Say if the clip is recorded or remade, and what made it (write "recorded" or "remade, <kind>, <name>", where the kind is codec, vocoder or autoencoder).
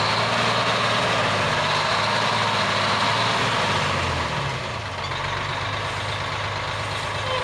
recorded